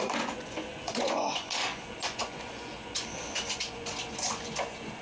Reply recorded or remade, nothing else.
remade